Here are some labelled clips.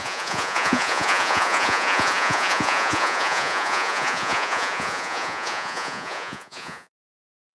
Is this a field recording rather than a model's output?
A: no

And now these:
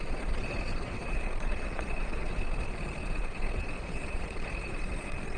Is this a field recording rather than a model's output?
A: no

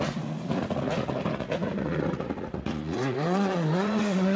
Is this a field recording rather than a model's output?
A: no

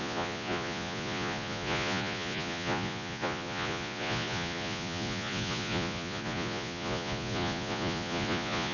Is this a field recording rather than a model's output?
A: no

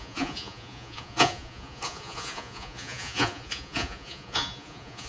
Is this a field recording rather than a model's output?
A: no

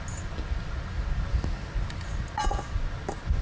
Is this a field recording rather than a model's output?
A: yes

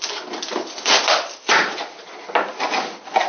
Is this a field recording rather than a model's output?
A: yes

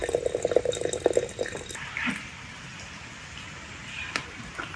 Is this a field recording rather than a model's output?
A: yes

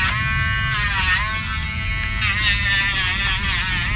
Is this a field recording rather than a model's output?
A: yes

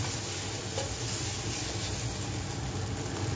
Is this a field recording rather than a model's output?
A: yes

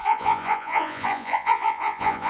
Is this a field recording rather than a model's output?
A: no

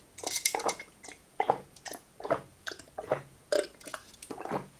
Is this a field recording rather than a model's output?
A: no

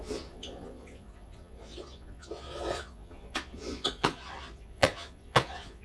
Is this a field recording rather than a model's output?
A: no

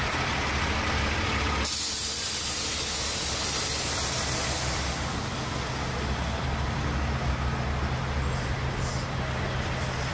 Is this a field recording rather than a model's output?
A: yes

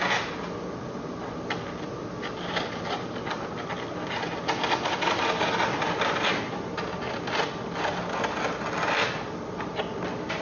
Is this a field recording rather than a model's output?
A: yes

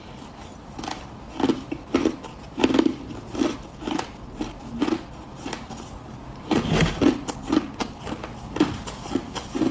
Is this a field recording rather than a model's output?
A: yes